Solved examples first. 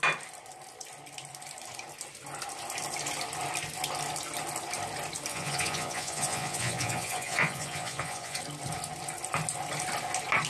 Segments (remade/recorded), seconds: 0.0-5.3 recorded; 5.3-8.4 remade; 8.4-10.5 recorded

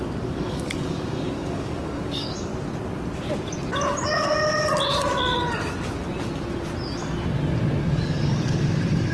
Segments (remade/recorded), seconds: 0.0-2.5 remade; 2.5-7.8 recorded; 7.8-9.1 remade

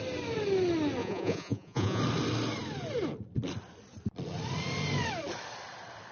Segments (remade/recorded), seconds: 0.0-1.0 recorded; 1.0-2.0 remade; 2.0-6.1 recorded

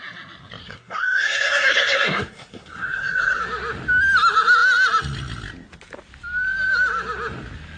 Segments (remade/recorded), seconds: 0.0-0.6 recorded; 0.6-3.4 remade; 3.4-7.8 recorded

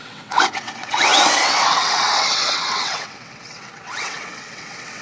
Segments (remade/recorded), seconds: 0.0-5.0 remade

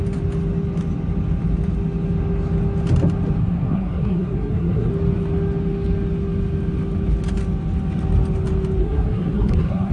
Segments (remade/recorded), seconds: 0.0-3.4 recorded; 3.4-4.9 remade; 4.9-8.8 recorded; 8.8-9.9 remade

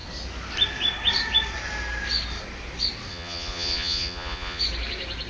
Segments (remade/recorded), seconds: 0.0-3.1 recorded; 3.1-4.6 remade; 4.6-5.3 recorded

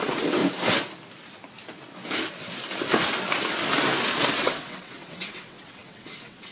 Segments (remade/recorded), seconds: 0.0-0.4 remade; 0.4-4.3 recorded; 4.3-6.5 remade